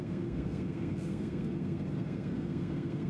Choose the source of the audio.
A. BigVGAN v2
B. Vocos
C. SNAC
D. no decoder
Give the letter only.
C